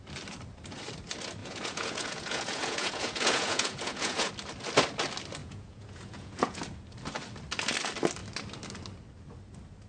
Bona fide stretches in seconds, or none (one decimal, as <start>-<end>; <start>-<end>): 0.0-1.4; 4.3-5.4; 6.6-9.9